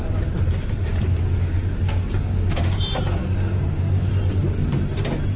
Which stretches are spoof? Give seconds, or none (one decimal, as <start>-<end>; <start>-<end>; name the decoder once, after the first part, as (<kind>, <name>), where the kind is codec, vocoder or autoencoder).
0.9-4.1 (codec, DAC)